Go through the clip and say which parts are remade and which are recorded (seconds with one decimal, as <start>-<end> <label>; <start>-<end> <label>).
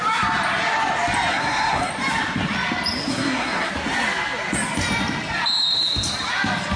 0.0-1.3 recorded; 1.3-1.9 remade; 1.9-3.1 recorded; 3.1-3.7 remade; 3.7-6.8 recorded